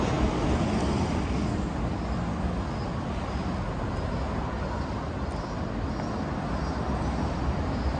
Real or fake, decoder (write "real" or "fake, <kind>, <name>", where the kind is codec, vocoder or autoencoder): real